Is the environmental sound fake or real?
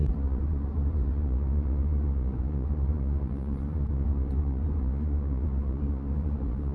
fake